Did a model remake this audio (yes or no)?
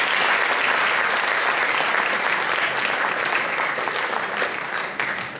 no